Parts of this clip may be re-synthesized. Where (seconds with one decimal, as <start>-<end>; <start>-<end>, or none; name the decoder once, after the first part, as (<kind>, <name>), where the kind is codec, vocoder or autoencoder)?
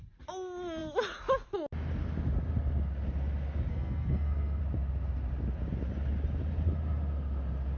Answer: 3.7-4.6 (codec, SNAC)